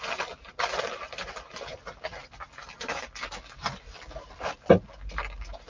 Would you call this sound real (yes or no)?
yes